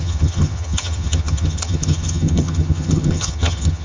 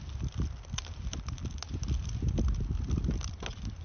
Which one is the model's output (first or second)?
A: first